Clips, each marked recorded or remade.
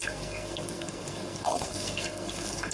remade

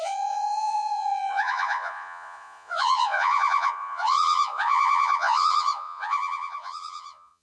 remade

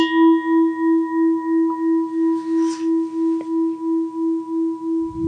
recorded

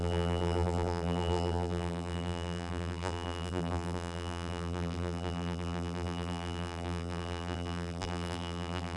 remade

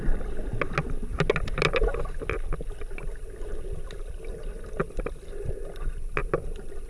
recorded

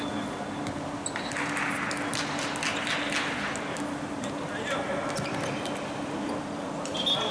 recorded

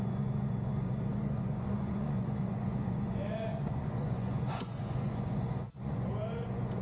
remade